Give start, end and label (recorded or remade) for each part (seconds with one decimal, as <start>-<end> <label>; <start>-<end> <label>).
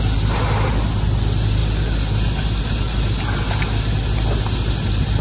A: 0.0-5.2 recorded